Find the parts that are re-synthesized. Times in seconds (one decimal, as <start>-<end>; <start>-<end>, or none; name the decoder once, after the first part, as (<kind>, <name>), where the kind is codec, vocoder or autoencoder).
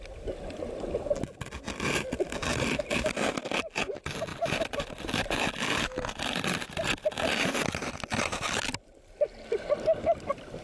none